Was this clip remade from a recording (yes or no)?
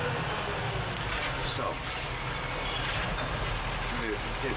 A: no